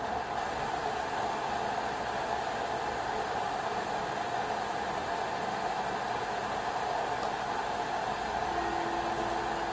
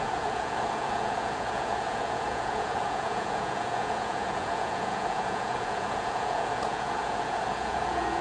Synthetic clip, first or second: second